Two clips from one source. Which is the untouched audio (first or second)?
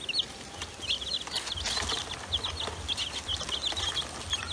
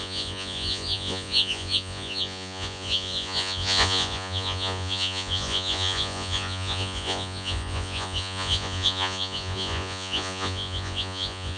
first